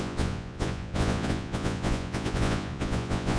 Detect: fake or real fake